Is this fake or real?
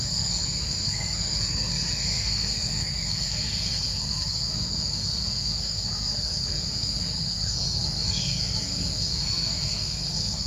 fake